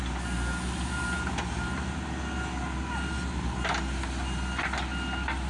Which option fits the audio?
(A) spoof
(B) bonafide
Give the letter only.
B